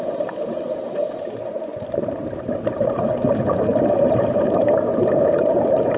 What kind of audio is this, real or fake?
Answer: fake